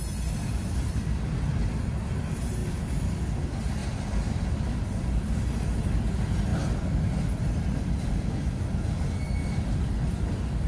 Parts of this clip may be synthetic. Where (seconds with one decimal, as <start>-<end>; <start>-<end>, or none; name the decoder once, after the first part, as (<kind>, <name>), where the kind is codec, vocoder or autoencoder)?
2.6-3.4 (vocoder, BigVGAN v2)

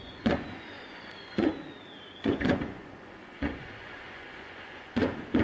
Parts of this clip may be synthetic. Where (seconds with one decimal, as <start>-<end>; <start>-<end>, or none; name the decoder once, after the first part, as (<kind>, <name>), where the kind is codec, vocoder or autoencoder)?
0.0-1.5 (vocoder, Vocos); 2.2-5.4

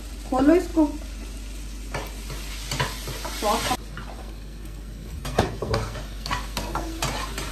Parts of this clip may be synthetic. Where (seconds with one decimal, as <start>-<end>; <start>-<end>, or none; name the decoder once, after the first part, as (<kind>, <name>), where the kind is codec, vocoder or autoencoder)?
4.2-7.0 (codec, SNAC)

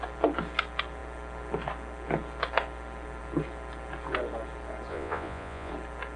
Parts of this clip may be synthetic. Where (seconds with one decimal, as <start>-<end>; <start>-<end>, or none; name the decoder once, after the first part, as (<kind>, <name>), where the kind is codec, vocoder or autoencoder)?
4.9-5.7 (vocoder, Vocos)

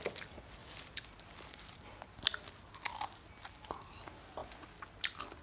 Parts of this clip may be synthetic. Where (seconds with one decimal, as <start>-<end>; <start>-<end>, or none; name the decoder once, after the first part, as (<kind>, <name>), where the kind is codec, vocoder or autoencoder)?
none

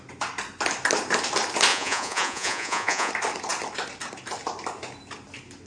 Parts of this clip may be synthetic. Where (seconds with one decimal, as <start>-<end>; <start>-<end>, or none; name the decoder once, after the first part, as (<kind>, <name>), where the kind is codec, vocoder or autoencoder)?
1.7-3.1 (vocoder, Vocos)

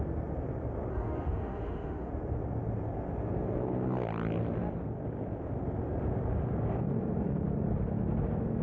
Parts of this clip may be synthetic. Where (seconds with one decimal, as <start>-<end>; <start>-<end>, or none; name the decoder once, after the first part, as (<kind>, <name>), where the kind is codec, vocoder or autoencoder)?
0.9-2.1 (autoencoder, DAC-VAE)